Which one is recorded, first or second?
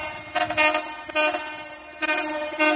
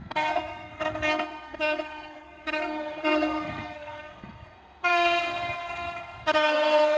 first